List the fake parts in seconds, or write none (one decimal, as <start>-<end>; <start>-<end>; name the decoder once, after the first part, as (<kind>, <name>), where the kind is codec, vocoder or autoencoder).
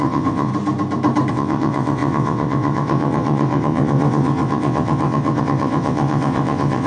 0.0-0.5 (vocoder, WaveNeXt); 1.3-6.9